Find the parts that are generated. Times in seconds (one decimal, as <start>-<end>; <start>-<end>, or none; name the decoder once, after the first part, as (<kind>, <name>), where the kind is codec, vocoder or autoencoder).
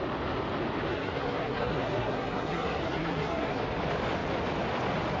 0.9-3.6 (codec, SNAC)